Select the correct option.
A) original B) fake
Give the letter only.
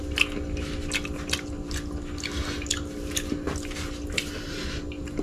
A